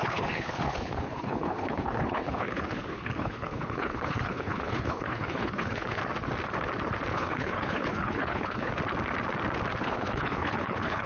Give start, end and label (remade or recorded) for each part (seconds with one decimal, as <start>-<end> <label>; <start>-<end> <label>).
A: 0.0-6.0 remade; 6.0-7.1 recorded; 7.1-8.7 remade; 8.7-9.8 recorded; 9.8-11.1 remade